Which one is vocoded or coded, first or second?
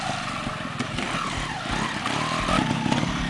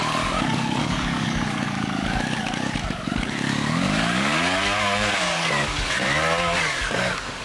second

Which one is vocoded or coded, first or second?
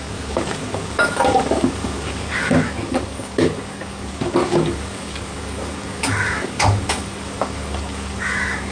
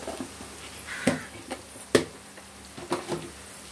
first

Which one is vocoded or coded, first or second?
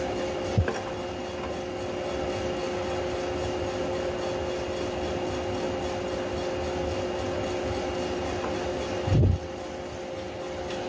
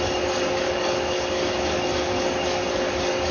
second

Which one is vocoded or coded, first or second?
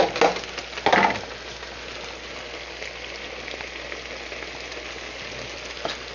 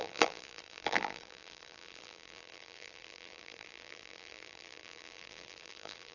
second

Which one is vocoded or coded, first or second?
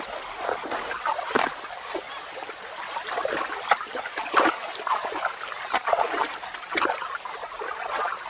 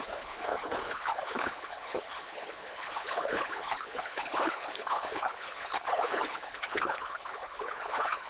second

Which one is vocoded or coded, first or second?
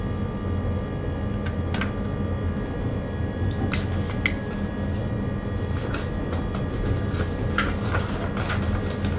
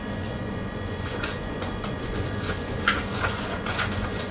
second